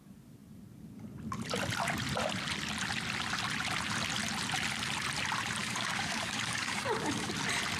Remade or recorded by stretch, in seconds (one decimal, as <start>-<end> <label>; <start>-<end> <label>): 0.0-5.6 recorded; 5.6-7.3 remade; 7.3-7.8 recorded